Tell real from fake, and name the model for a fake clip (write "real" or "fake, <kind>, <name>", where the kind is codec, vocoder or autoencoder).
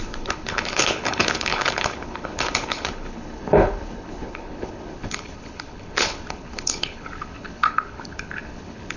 fake, codec, HILCodec